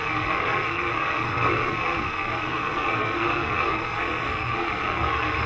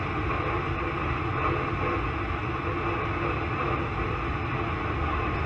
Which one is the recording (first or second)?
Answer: second